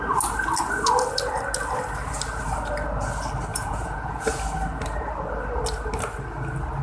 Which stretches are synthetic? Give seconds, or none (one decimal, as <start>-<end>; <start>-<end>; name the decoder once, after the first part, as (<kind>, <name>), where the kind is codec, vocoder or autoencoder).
3.5-4.4 (vocoder, Vocos)